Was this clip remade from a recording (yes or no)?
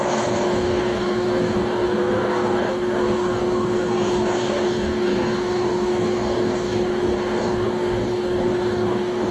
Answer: yes